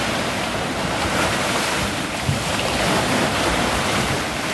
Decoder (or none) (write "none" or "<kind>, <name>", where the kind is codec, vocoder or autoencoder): vocoder, BigVGAN v2